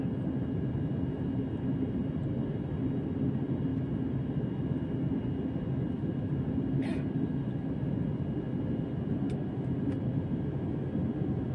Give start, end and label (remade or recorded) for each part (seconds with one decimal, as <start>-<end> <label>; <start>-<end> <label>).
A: 0.0-11.5 recorded